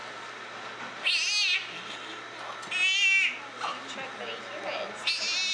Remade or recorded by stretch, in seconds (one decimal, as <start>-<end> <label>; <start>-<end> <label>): 0.0-5.5 recorded